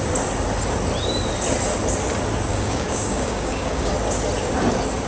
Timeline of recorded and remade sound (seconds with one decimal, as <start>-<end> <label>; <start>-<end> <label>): 0.0-2.5 recorded; 2.5-3.9 remade; 3.9-5.1 recorded